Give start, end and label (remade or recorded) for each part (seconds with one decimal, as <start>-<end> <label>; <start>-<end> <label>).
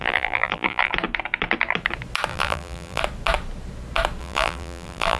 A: 0.0-0.9 remade; 0.9-2.3 recorded; 2.3-3.0 remade; 3.0-4.2 recorded; 4.2-5.2 remade